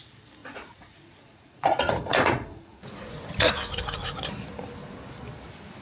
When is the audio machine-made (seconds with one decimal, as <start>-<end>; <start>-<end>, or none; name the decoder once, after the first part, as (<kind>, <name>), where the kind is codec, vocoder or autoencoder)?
0.4-3.5 (vocoder, Vocos)